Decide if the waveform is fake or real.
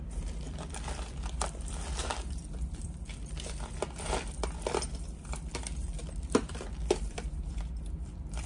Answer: fake